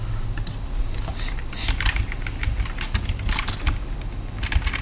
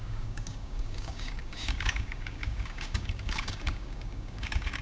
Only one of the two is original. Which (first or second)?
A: first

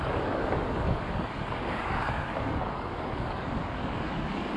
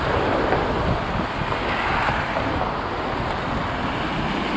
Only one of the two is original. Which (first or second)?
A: second